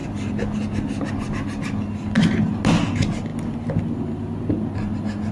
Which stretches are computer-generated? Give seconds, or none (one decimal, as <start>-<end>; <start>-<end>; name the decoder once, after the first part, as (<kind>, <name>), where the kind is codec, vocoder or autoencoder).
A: none